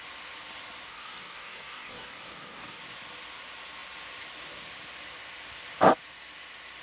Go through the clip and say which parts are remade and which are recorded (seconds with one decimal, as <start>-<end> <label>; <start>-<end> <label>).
0.0-0.9 recorded; 0.9-2.8 remade; 2.8-6.8 recorded